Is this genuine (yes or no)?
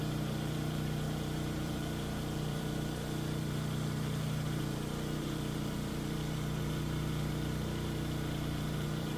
no